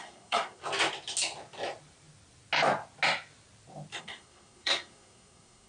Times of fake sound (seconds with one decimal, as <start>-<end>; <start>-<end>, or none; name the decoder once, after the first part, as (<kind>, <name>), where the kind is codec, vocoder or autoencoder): 0.0-0.6 (codec, SNAC); 4.0-5.7